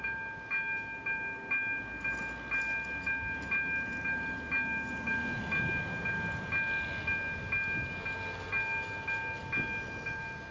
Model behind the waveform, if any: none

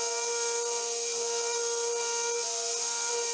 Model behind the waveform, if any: none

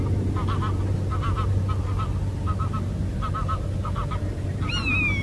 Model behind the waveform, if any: none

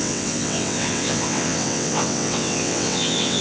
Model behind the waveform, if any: vocoder, WaveNeXt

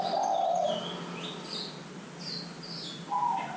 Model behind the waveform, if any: none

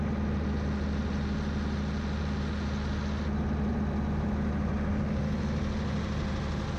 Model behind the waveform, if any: none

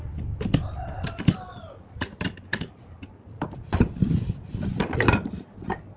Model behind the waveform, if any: none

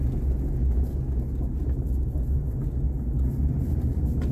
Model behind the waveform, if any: none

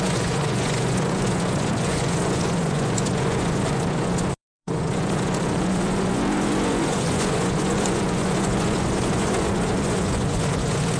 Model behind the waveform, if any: vocoder, Vocos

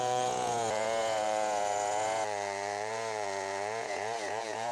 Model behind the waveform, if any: vocoder, Vocos